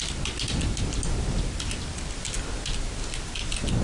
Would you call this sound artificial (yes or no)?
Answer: no